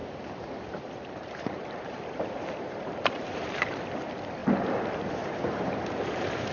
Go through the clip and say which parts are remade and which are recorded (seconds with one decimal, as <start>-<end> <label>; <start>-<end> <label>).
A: 0.0-3.8 remade; 3.8-4.4 recorded; 4.4-6.5 remade